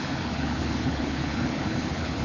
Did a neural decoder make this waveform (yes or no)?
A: yes